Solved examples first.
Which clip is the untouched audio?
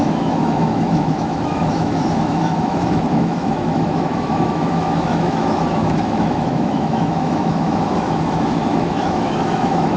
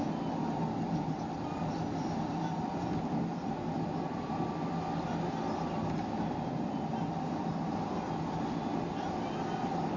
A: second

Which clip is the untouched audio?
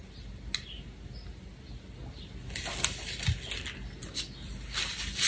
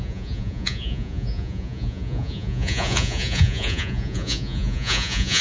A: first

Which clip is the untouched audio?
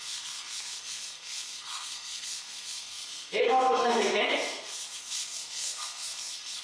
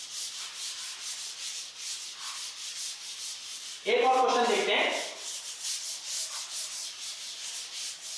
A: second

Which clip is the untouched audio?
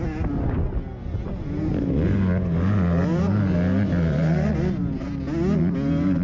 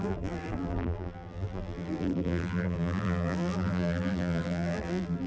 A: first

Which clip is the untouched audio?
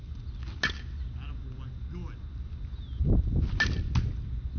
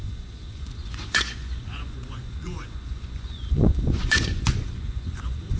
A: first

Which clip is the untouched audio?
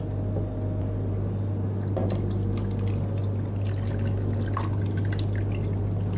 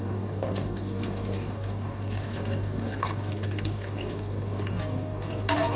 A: first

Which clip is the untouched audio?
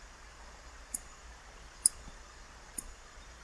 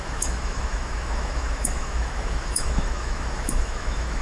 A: first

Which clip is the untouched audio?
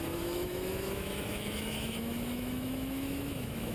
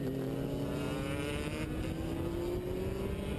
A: second